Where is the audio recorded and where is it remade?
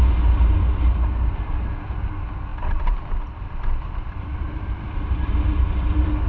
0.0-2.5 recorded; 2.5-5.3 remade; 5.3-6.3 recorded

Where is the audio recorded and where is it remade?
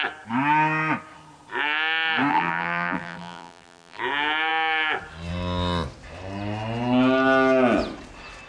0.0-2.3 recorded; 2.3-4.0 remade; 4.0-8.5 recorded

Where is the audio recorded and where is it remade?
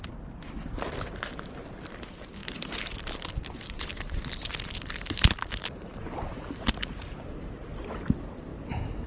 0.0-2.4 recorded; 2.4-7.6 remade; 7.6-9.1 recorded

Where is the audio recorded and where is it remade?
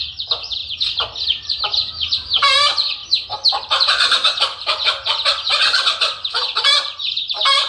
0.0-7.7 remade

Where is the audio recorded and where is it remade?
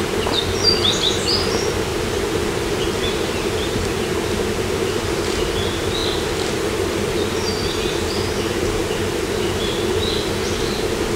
0.0-1.9 recorded; 1.9-5.2 remade; 5.2-11.2 recorded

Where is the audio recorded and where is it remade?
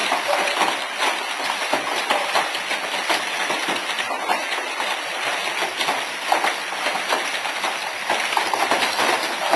0.0-5.4 remade; 5.4-7.7 recorded; 7.7-9.6 remade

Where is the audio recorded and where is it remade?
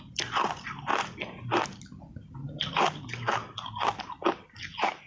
0.0-5.1 recorded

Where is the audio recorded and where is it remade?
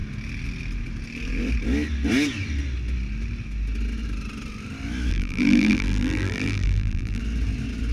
0.0-5.1 recorded; 5.1-7.2 remade; 7.2-7.9 recorded